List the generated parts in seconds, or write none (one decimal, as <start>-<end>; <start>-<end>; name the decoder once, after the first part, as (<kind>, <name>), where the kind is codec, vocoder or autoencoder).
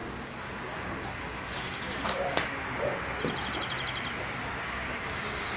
0.0-2.6 (codec, DAC); 4.6-5.6